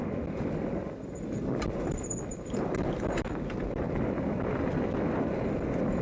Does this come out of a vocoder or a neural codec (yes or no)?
no